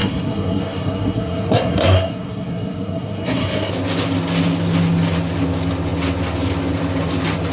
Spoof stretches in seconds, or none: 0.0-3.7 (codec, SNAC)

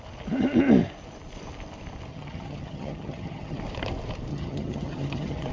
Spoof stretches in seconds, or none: 2.1-3.6 (vocoder, HiFi-GAN); 4.3-5.5